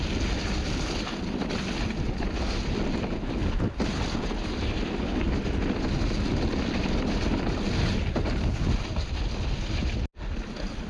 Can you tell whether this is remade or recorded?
recorded